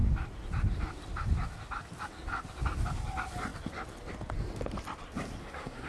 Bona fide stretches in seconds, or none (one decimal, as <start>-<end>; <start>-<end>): 0.0-5.4